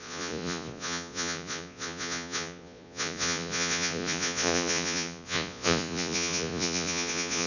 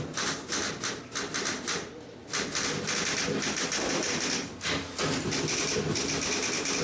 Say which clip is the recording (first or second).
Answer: second